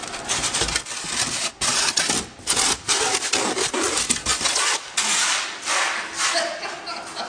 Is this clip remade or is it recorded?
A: recorded